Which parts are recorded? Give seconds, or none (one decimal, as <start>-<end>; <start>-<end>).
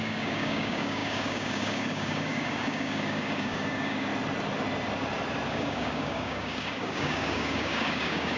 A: 4.1-5.5